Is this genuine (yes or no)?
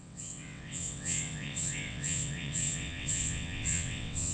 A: no